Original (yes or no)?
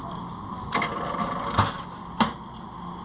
yes